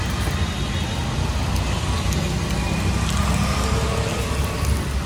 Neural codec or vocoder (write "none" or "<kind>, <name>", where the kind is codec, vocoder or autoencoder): none